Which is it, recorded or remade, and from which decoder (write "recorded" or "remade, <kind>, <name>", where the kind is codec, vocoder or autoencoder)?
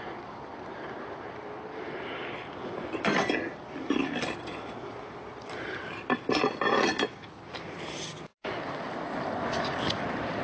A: recorded